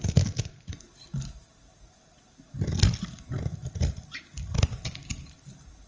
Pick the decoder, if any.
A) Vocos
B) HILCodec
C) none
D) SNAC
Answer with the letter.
C